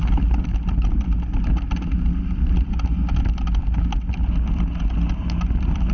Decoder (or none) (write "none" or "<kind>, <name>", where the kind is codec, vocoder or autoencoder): none